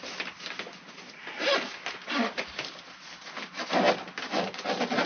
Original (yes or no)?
yes